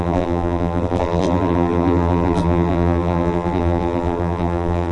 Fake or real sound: fake